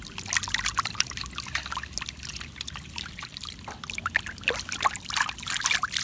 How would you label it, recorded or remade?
recorded